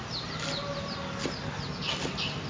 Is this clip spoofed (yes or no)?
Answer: no